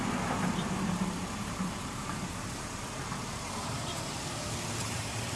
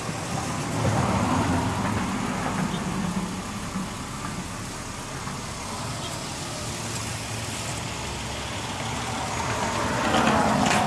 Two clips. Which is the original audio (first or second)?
second